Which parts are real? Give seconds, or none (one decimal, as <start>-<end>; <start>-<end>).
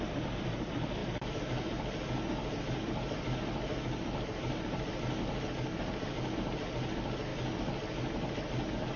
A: 0.0-9.0